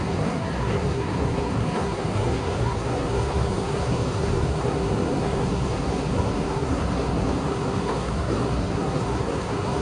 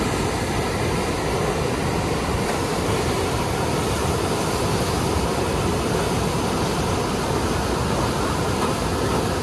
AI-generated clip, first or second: first